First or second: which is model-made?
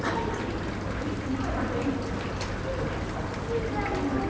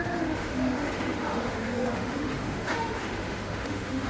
second